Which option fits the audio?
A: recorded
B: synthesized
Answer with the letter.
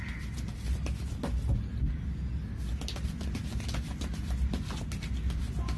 A